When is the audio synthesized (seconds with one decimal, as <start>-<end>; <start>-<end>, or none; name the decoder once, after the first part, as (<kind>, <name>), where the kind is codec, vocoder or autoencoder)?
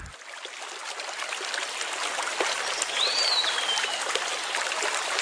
none